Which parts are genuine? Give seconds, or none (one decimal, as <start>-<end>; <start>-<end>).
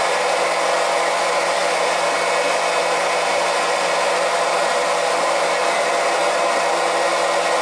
0.0-7.6